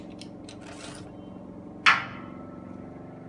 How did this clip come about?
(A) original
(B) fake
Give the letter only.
A